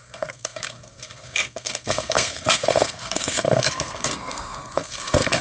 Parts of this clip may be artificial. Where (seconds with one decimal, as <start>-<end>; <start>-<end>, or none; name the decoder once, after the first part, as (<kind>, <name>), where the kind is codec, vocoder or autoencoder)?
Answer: 0.0-5.4 (codec, SNAC)